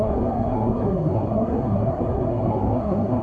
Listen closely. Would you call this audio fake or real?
fake